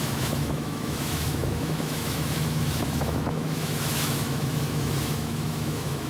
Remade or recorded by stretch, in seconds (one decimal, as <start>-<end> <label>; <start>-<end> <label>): 0.0-6.1 remade